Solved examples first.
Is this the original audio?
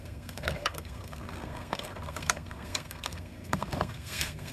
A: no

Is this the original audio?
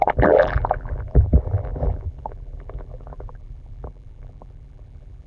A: no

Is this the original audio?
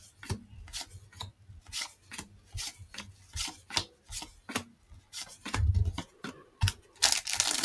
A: yes